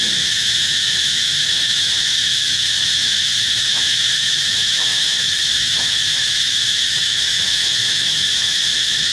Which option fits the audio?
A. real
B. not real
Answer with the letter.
B